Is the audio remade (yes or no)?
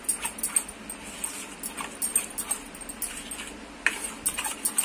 no